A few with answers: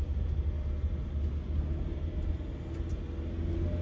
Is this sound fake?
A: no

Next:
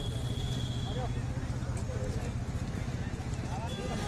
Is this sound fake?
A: no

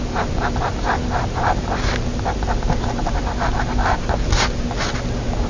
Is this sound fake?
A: no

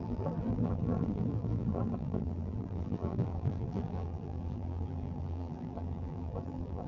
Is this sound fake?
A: yes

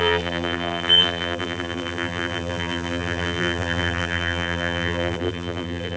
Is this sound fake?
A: yes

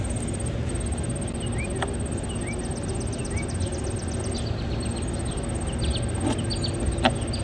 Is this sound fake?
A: no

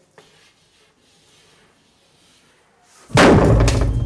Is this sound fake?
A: no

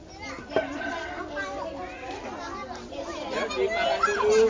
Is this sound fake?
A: no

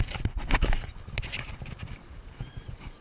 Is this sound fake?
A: yes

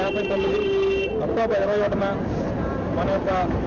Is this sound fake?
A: yes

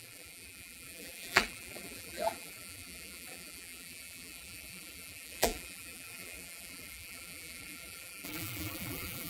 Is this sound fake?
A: yes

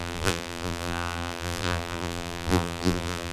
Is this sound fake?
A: yes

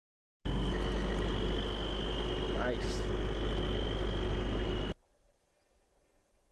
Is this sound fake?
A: no